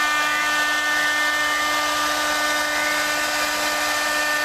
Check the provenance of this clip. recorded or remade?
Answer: recorded